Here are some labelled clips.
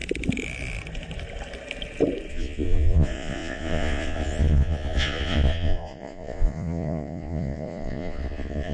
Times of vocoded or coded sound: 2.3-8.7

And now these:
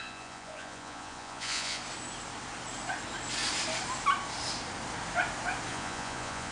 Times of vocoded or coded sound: 0.0-1.8; 5.7-6.5